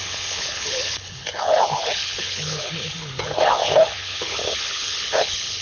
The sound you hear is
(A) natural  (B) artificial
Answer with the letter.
B